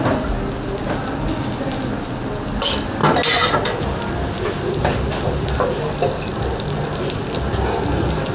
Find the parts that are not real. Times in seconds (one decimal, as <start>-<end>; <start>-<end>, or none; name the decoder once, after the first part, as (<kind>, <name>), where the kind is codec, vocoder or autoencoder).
none